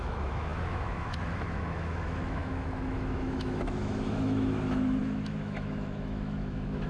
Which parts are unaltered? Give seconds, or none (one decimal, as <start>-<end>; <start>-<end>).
none